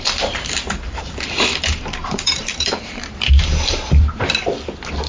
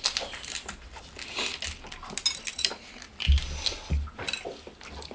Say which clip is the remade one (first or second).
first